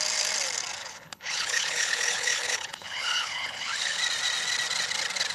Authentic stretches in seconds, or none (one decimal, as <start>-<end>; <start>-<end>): 0.0-0.8; 4.0-5.3